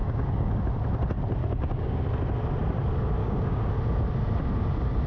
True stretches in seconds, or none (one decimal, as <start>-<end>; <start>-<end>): 0.6-1.4; 2.0-3.2; 3.7-5.1